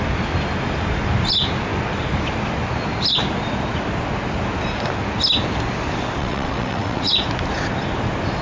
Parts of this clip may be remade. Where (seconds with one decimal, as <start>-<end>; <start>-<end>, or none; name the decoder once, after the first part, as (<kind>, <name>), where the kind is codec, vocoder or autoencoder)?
6.2-7.1 (vocoder, WaveNeXt)